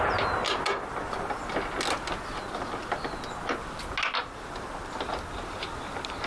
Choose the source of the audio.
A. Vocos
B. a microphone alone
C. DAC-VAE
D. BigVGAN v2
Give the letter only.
B